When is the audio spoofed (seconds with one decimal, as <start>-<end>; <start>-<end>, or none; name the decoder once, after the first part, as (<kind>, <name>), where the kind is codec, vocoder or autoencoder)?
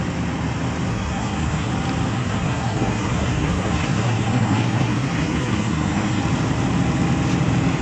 0.9-1.7 (codec, SNAC); 2.1-6.2